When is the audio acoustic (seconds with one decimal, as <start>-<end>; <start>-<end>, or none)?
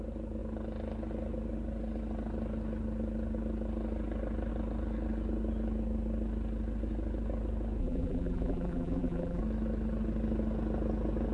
0.0-7.8; 9.4-11.3